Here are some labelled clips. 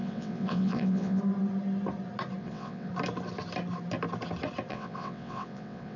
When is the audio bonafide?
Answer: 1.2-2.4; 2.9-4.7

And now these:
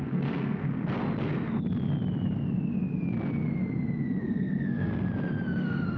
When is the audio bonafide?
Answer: 0.6-4.2; 4.9-5.6